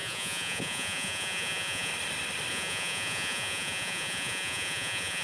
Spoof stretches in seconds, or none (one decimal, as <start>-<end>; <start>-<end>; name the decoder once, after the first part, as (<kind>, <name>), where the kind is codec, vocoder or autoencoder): 0.0-1.9 (vocoder, Vocos); 2.5-5.2

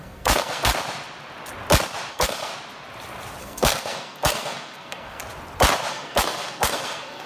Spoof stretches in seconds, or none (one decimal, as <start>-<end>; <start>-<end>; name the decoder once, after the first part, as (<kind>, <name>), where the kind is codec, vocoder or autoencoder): 0.0-0.7 (codec, SNAC); 2.1-2.5; 3.4-5.2; 5.9-7.3

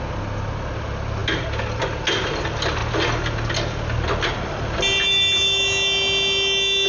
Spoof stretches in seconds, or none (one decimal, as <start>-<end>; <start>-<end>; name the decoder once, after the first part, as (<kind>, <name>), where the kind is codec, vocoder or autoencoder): none

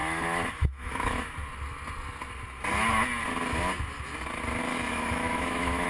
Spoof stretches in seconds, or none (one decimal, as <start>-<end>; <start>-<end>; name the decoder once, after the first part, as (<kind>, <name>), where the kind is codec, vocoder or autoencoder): 0.0-1.4 (autoencoder, DAC-VAE); 4.9-5.9

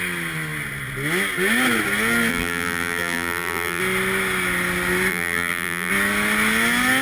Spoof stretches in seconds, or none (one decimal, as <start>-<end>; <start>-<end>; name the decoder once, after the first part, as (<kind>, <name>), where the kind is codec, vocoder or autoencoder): 2.3-3.8 (vocoder, BigVGAN v2); 5.1-5.9

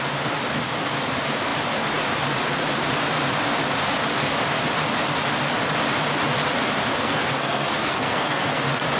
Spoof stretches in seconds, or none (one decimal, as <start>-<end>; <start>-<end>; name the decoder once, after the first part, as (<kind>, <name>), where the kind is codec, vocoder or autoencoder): 7.0-8.6 (codec, SNAC)

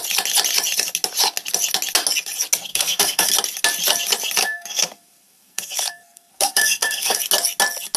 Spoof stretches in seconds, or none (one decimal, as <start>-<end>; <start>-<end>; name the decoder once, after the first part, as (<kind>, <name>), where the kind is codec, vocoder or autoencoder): 2.7-3.3 (codec, SNAC); 4.4-7.2